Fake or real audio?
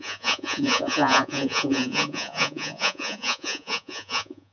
fake